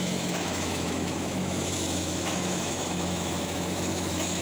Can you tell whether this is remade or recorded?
remade